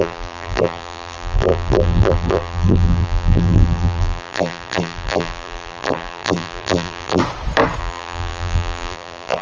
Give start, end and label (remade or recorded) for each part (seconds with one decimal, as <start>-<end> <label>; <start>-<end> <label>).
0.0-7.2 remade; 7.2-7.8 recorded; 7.8-9.4 remade